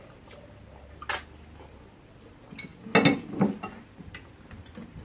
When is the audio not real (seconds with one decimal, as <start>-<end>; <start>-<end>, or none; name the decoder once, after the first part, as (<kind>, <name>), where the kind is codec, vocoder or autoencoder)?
none